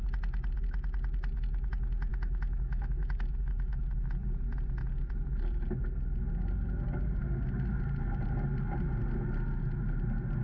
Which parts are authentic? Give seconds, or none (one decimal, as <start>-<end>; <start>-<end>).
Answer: 0.0-2.1; 3.8-10.4